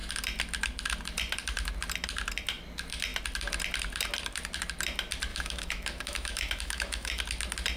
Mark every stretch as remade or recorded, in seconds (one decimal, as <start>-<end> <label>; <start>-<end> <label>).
0.0-5.3 recorded; 5.3-7.2 remade; 7.2-7.8 recorded